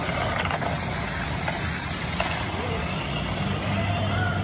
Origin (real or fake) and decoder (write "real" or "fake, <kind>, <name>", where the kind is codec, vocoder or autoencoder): real